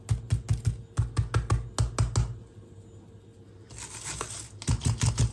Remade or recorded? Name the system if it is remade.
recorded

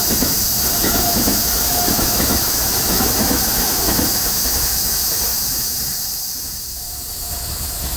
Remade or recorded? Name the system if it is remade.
remade, autoencoder, DAC-VAE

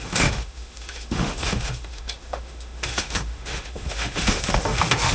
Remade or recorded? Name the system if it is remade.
remade, autoencoder, DAC-VAE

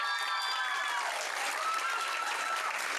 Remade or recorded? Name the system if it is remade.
recorded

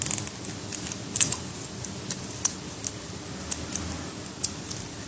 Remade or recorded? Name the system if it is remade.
recorded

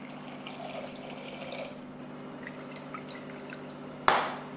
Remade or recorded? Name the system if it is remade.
recorded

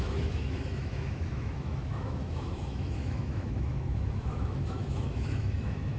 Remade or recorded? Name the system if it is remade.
remade, autoencoder, DAC-VAE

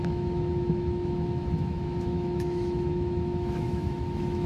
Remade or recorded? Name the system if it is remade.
remade, autoencoder, DAC-VAE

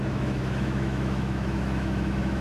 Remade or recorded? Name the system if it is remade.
remade, autoencoder, DAC-VAE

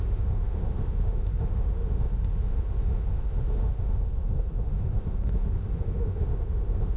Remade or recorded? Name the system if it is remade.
remade, autoencoder, DAC-VAE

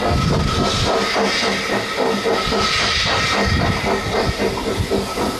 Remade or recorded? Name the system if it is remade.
recorded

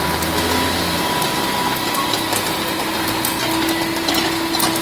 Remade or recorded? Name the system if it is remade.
recorded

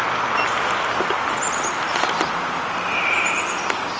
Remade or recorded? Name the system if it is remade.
recorded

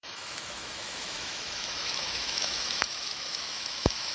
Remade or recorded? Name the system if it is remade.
remade, autoencoder, DAC-VAE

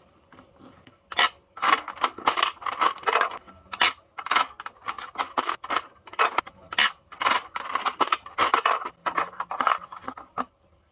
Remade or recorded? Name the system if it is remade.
recorded